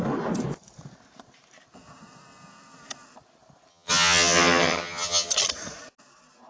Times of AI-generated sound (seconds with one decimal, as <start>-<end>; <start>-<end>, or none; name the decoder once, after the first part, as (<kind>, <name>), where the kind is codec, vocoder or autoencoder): 3.7-5.3 (vocoder, HiFi-GAN)